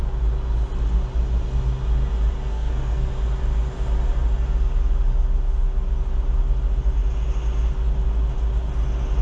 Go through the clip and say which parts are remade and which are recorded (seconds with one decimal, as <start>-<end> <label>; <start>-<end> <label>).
0.0-2.5 recorded; 2.5-3.1 remade; 3.1-9.2 recorded